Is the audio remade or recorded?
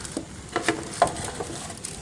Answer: recorded